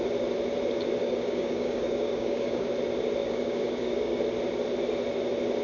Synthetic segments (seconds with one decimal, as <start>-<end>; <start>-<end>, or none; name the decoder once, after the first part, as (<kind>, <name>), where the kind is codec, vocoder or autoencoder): 1.0-2.7 (codec, DAC); 3.2-4.2